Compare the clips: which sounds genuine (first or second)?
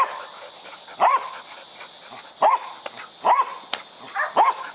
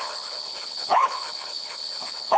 first